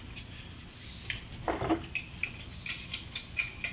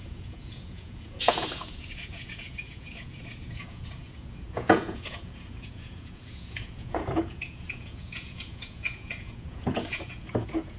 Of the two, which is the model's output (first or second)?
second